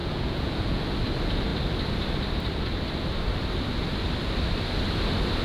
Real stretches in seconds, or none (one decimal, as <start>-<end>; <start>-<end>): 0.8-5.4